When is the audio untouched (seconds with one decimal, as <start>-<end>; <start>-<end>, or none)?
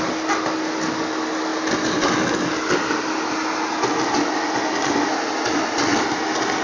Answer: 0.0-6.6